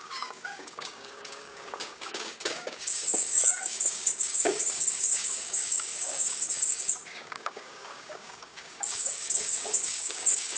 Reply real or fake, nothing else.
fake